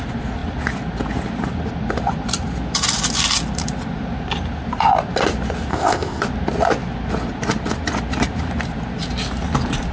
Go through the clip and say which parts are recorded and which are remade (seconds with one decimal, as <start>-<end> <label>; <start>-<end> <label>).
0.0-5.7 recorded; 5.7-6.2 remade; 6.2-9.9 recorded